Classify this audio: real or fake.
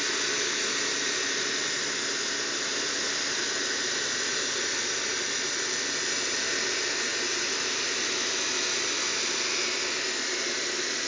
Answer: real